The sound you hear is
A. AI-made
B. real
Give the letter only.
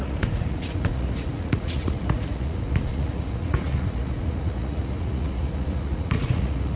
A